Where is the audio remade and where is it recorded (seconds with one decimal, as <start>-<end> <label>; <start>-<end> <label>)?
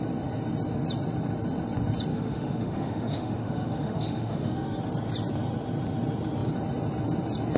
0.0-2.1 recorded; 2.1-4.8 remade; 4.8-7.6 recorded